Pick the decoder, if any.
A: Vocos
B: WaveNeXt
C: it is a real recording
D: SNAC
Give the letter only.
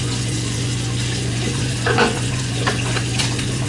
A